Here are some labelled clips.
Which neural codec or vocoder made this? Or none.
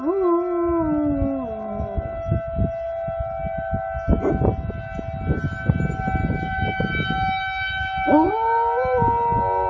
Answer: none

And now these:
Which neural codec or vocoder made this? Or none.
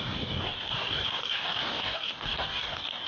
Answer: codec, DAC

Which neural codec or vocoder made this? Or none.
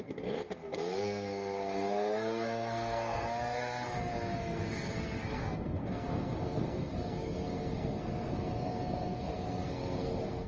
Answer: codec, SNAC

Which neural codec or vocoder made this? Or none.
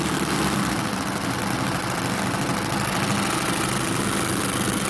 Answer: none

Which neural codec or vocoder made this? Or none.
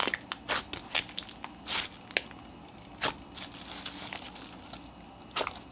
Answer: none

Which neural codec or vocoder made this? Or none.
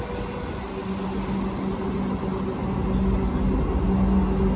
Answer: none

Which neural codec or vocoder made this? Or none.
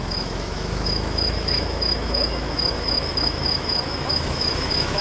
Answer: autoencoder, DAC-VAE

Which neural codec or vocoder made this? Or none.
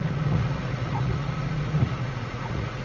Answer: vocoder, Vocos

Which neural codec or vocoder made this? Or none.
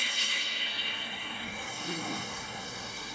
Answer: codec, SNAC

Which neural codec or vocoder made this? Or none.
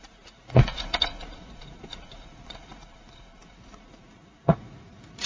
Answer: vocoder, Vocos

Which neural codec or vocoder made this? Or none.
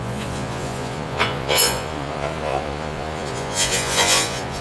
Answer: vocoder, Vocos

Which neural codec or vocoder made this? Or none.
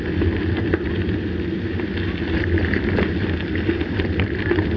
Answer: none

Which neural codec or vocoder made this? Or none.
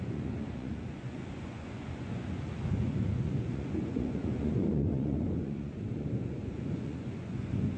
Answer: vocoder, Vocos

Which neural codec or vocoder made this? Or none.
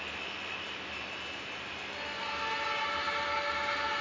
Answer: none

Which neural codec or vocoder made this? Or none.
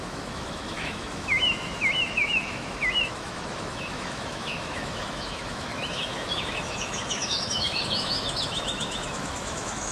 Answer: autoencoder, DAC-VAE